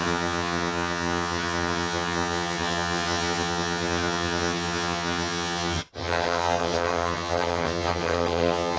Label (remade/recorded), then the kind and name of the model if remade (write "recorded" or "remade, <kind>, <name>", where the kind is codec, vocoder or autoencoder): remade, vocoder, HiFi-GAN